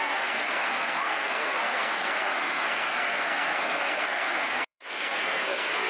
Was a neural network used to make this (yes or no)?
yes